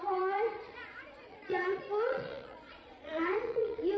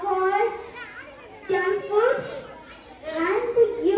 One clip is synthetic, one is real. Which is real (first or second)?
second